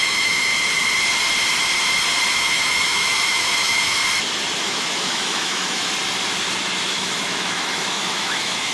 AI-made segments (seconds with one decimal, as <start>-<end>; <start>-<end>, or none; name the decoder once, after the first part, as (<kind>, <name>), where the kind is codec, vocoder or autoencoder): 0.0-0.5 (autoencoder, DAC-VAE); 2.3-4.0; 4.6-5.8; 6.9-8.7